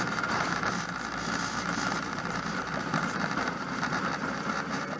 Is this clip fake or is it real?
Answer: fake